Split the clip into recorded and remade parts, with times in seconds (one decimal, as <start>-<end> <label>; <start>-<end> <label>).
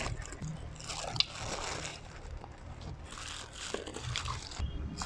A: 0.0-1.9 recorded; 1.9-2.9 remade; 2.9-3.9 recorded; 3.9-4.6 remade; 4.6-5.1 recorded